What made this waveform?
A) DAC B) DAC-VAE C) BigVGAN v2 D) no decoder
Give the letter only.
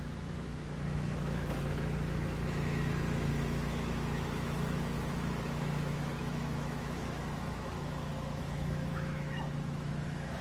B